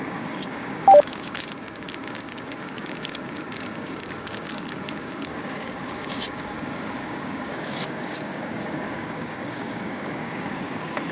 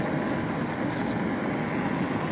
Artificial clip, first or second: first